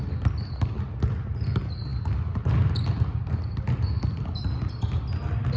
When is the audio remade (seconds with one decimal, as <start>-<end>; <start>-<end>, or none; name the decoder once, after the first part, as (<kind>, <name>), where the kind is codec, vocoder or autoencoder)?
none